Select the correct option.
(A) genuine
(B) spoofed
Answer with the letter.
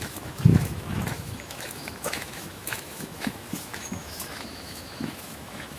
B